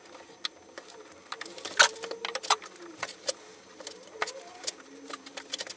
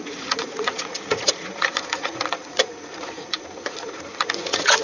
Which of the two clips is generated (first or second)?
second